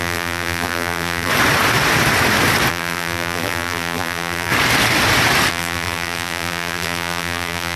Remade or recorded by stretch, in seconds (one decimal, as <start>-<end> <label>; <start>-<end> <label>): 0.0-1.3 remade; 1.3-2.7 recorded; 2.7-4.5 remade; 4.5-5.5 recorded; 5.5-7.8 remade